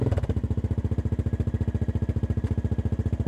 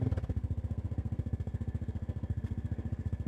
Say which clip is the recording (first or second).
first